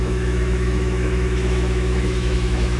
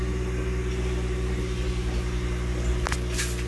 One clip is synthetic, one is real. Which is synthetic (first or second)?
first